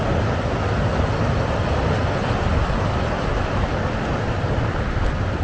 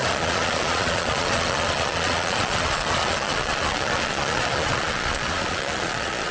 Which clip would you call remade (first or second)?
second